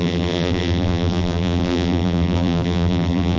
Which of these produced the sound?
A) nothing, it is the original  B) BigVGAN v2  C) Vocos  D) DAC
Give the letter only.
B